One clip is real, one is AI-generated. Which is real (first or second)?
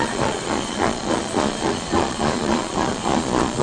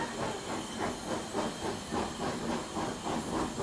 second